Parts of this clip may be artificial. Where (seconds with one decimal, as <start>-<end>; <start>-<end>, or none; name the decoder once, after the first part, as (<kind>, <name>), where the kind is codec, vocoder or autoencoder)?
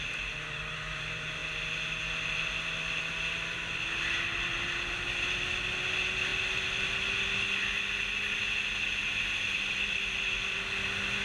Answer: none